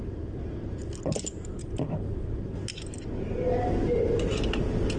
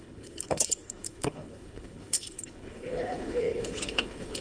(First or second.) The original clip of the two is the first